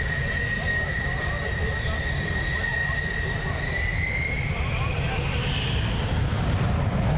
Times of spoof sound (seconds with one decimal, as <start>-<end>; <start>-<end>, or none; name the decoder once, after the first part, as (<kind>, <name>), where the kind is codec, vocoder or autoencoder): 0.7-1.3 (codec, DAC)

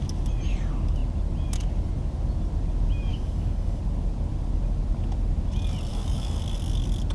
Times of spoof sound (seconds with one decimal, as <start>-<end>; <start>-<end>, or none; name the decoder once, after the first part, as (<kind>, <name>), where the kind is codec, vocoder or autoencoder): 3.1-3.8 (codec, DAC); 5.9-6.4

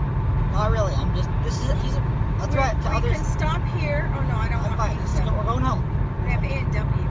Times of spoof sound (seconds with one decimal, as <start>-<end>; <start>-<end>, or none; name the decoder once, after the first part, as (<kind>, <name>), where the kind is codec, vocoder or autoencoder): none

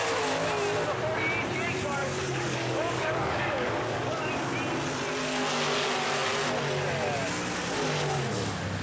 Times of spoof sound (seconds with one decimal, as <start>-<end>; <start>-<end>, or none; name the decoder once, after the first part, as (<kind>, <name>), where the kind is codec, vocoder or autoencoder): 2.0-4.3 (codec, DAC)

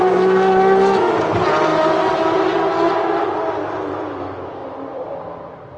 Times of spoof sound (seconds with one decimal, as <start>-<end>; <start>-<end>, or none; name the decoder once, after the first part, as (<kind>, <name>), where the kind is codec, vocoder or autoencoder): none

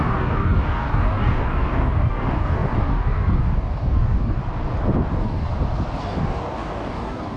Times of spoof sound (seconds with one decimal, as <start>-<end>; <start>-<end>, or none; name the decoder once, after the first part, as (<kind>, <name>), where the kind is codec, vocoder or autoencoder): 0.0-4.4 (codec, DAC); 5.1-5.5; 6.0-7.4

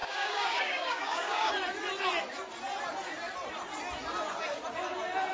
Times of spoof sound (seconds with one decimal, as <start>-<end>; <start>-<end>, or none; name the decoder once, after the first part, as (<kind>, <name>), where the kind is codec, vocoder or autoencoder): 0.0-1.5 (codec, DAC)